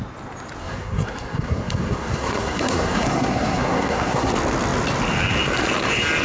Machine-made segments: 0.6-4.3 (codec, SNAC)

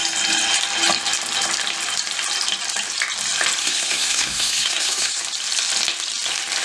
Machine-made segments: 3.6-5.2 (codec, SNAC)

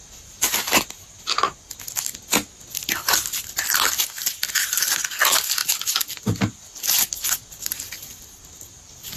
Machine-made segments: none